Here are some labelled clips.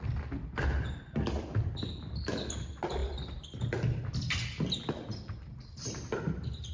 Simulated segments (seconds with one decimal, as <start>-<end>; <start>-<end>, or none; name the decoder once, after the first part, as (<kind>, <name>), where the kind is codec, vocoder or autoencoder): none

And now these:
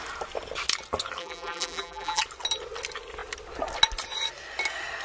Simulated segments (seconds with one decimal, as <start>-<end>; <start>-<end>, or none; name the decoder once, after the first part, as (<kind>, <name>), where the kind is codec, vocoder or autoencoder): 1.2-2.2 (vocoder, BigVGAN v2)

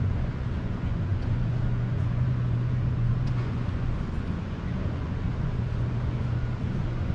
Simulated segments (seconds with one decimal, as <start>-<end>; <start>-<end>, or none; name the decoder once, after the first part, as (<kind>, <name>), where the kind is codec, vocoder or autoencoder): 0.0-7.1 (vocoder, Vocos)